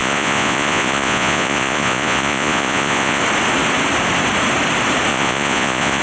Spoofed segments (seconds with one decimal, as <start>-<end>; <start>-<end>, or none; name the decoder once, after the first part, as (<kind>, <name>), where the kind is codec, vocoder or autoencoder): 0.0-3.2 (vocoder, Vocos); 5.1-6.0